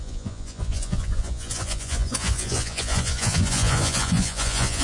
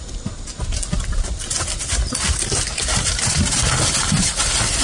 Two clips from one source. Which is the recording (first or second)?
second